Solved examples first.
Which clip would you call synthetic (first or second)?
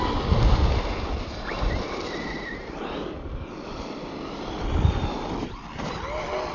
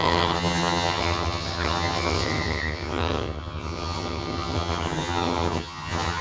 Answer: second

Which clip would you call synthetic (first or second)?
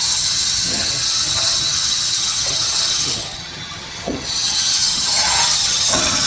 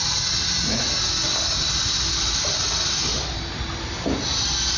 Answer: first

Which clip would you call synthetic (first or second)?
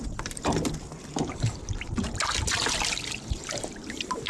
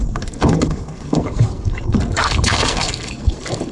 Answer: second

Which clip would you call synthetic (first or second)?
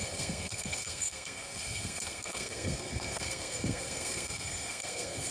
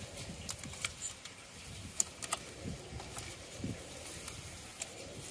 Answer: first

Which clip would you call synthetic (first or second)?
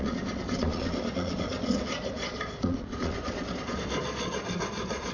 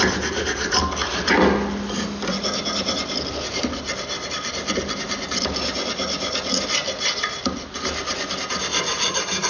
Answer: first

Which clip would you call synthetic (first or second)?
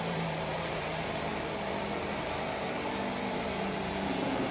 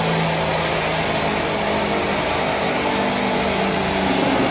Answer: first